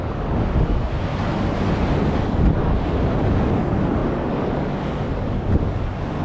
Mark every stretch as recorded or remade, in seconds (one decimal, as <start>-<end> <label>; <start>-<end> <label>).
0.0-1.1 remade; 1.1-2.1 recorded; 2.1-2.6 remade; 2.6-3.2 recorded; 3.2-6.2 remade